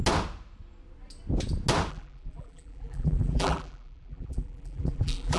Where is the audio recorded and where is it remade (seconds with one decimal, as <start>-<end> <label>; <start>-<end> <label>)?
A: 0.0-1.9 recorded; 1.9-5.4 remade